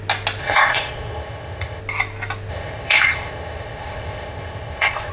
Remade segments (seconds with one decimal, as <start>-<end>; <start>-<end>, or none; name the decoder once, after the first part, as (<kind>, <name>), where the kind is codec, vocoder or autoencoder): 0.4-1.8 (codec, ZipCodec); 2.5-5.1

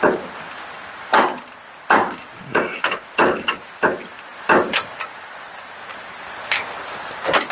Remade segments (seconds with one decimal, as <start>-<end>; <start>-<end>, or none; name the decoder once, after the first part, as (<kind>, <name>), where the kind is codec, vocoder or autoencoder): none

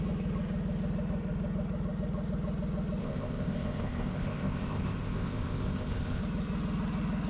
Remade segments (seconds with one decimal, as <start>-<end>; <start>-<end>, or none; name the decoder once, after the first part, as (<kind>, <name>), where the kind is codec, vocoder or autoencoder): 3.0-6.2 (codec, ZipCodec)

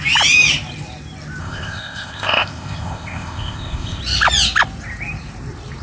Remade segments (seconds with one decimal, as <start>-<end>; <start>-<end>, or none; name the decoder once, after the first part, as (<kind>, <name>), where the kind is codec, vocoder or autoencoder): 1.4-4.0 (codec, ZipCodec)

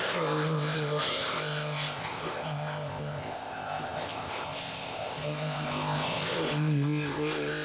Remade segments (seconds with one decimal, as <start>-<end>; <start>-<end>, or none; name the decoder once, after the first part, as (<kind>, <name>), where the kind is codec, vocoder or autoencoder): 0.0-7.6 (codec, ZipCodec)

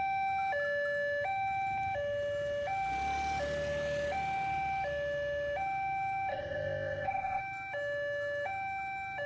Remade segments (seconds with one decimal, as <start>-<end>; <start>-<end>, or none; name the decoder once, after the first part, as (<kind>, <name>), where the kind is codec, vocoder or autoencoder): 6.3-7.4 (codec, ZipCodec)

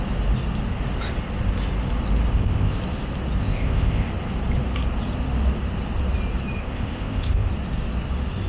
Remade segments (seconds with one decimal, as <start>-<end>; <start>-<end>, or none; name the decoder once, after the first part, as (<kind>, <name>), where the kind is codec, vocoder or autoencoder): 2.3-2.8 (codec, ZipCodec); 3.4-4.1; 6.6-7.5